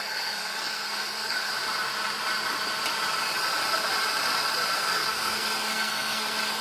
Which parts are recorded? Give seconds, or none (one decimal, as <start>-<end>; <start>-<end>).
1.5-4.7